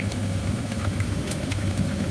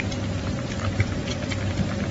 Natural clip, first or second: second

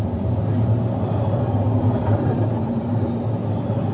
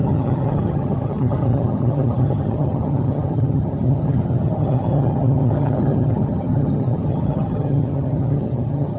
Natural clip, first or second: first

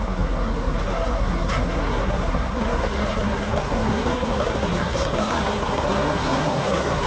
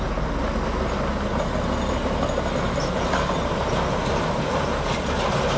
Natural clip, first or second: second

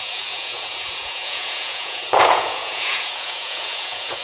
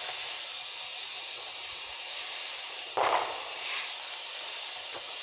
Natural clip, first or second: second